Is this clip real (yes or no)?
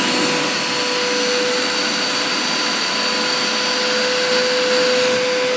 yes